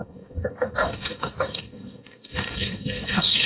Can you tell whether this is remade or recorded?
remade